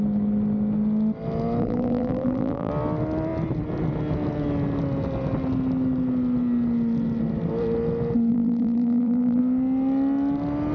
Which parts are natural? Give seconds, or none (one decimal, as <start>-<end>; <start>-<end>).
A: 0.0-1.6; 2.7-8.3; 9.4-10.7